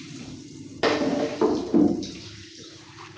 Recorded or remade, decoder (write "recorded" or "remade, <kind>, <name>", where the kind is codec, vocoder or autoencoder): remade, vocoder, BigVGAN v2